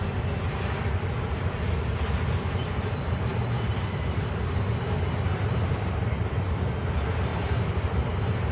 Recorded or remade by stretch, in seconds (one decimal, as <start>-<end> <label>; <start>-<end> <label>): 0.0-8.5 recorded